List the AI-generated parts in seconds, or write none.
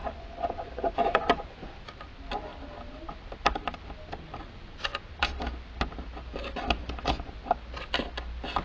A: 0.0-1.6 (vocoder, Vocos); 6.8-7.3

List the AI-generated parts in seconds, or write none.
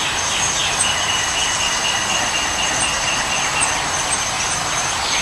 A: none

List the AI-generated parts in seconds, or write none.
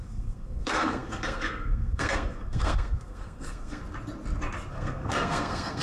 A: 0.0-3.8 (codec, SNAC); 4.7-5.8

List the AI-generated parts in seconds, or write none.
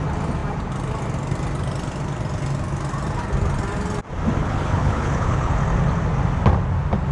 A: 4.4-5.5 (codec, HILCodec)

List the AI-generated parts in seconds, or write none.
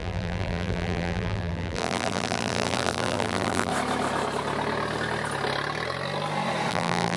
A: 0.0-3.7 (vocoder, BigVGAN v2); 6.7-7.2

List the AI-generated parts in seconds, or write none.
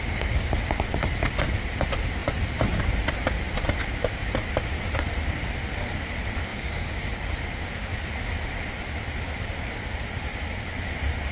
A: 0.0-0.5 (codec, DAC); 6.5-7.2